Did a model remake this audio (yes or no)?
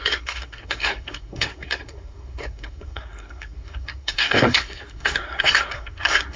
yes